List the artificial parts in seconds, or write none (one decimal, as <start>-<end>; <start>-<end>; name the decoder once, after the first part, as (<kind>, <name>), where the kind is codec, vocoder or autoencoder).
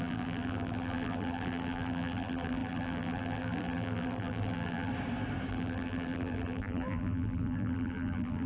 0.0-4.9 (vocoder, BigVGAN v2); 5.5-8.5